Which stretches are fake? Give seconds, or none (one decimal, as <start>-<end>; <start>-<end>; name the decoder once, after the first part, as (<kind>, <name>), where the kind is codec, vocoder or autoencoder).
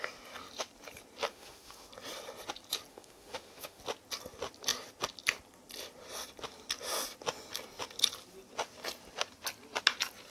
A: 1.3-1.9 (autoencoder, DAC-VAE); 2.9-3.8